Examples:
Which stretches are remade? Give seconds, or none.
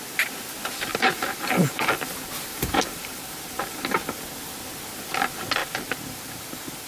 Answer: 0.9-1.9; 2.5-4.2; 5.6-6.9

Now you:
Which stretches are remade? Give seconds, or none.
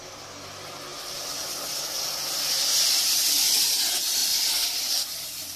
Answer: none